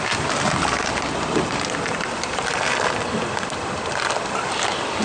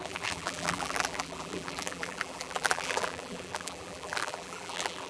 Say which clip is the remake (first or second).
second